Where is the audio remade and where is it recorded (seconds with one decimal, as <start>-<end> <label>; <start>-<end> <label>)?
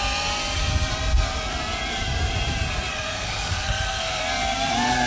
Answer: 0.0-2.9 recorded; 2.9-4.2 remade; 4.2-5.1 recorded